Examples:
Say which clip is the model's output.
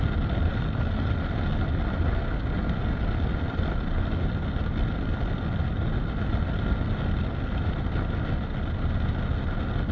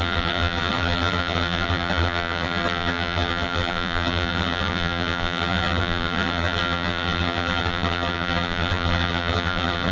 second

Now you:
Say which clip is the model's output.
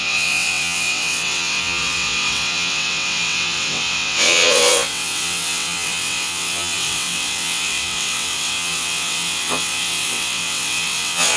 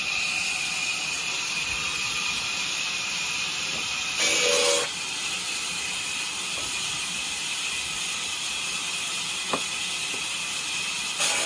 first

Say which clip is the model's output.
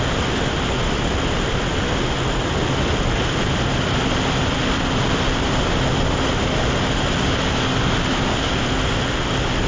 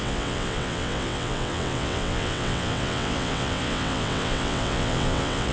second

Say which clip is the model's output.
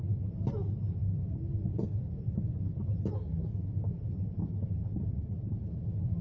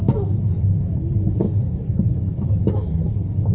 second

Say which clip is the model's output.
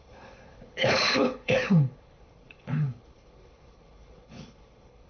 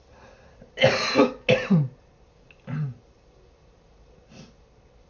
first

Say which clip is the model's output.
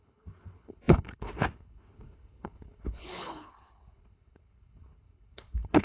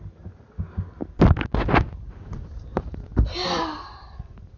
first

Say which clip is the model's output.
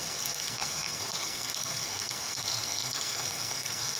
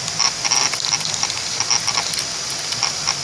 first